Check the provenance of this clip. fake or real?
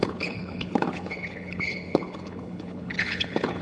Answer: fake